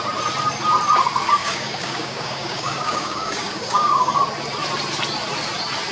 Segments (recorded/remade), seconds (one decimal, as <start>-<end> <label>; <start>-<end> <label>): 0.0-1.4 recorded; 1.4-4.1 remade; 4.1-5.9 recorded